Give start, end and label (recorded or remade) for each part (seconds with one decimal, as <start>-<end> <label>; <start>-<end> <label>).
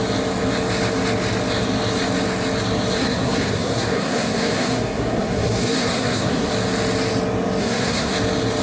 0.0-3.0 recorded; 3.0-6.5 remade; 6.5-7.6 recorded; 7.6-8.1 remade; 8.1-8.6 recorded